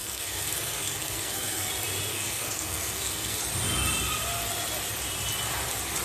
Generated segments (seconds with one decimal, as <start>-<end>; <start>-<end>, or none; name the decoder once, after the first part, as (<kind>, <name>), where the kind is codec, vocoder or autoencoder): 0.0-1.7 (codec, SNAC); 2.1-3.4